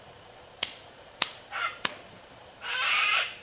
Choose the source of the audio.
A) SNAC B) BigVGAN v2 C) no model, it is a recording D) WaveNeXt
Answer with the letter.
B